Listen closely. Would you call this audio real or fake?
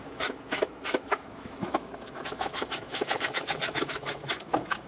fake